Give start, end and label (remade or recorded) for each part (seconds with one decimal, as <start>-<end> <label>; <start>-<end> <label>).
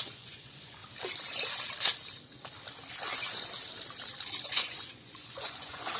0.0-0.8 remade; 0.8-4.4 recorded; 4.4-6.0 remade